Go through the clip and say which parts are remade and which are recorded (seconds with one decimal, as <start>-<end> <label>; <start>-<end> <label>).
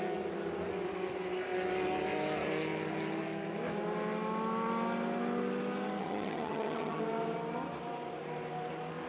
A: 0.0-6.0 recorded; 6.0-7.0 remade; 7.0-9.1 recorded